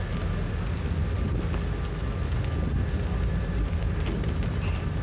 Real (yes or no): yes